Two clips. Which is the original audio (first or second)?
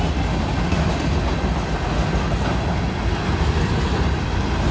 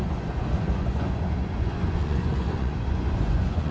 first